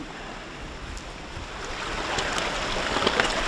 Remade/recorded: recorded